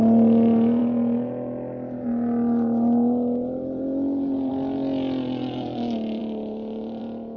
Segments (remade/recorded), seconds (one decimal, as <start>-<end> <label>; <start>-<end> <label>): 0.0-7.4 recorded